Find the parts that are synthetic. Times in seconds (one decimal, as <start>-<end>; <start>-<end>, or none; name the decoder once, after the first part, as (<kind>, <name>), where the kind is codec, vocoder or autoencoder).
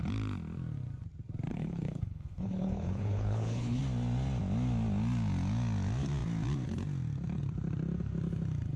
1.5-3.8 (codec, HILCodec)